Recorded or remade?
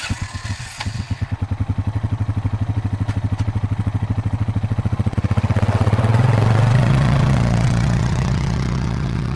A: remade